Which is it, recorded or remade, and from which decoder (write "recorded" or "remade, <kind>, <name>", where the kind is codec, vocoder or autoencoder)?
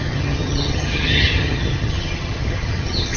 remade, vocoder, HiFi-GAN